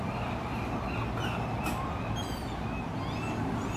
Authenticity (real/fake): real